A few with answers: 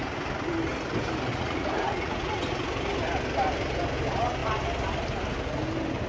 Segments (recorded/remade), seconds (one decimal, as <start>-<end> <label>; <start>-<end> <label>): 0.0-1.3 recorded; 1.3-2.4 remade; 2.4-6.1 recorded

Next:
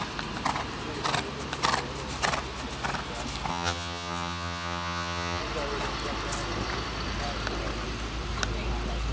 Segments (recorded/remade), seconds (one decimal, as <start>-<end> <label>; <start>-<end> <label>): 0.0-3.5 recorded; 3.5-5.4 remade; 5.4-9.1 recorded

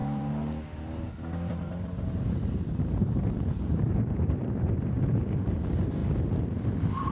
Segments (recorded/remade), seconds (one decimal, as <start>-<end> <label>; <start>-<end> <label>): 0.0-6.0 remade; 6.0-7.1 recorded

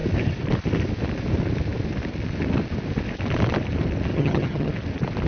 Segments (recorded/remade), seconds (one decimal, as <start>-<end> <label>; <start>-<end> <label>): 0.0-4.1 recorded; 4.1-4.7 remade; 4.7-5.3 recorded

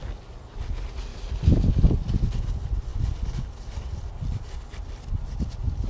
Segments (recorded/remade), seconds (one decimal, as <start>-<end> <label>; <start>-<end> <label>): 0.0-5.9 recorded

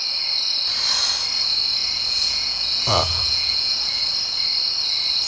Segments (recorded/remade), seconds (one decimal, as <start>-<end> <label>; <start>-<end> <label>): 0.0-1.8 recorded; 1.8-3.9 remade; 3.9-5.3 recorded